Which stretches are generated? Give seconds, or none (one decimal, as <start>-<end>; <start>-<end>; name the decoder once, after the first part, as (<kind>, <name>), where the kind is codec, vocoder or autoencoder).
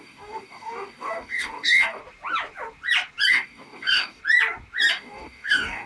0.0-2.0 (codec, DAC); 3.3-4.2; 4.9-5.9